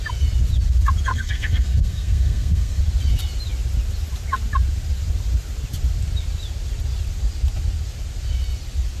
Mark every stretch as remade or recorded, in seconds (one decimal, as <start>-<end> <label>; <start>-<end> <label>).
0.0-1.1 recorded; 1.1-2.8 remade; 2.8-9.0 recorded